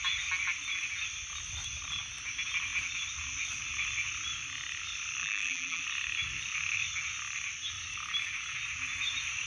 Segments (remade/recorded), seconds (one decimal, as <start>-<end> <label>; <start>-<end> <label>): 0.0-5.2 recorded; 5.2-5.8 remade; 5.8-9.5 recorded